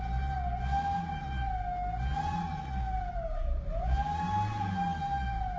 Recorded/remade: recorded